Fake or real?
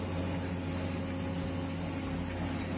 real